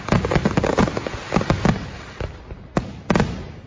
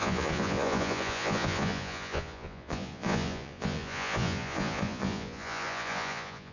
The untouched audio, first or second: first